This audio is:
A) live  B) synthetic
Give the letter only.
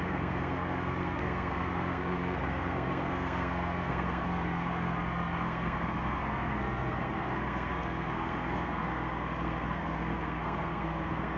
B